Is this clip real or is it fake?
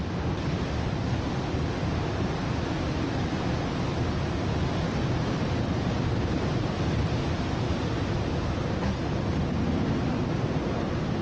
real